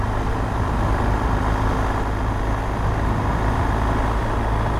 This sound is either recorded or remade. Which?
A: recorded